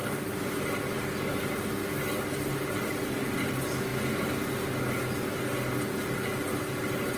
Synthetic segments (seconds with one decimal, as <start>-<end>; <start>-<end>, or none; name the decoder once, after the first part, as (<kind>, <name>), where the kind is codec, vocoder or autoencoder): 1.8-2.9 (vocoder, BigVGAN v2)